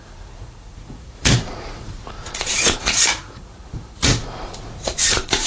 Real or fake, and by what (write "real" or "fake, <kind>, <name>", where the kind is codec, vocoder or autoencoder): fake, vocoder, Vocos